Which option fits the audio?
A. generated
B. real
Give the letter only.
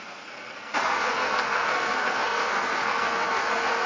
A